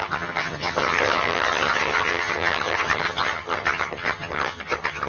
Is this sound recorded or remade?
remade